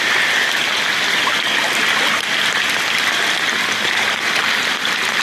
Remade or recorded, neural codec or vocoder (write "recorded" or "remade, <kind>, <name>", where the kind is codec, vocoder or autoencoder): recorded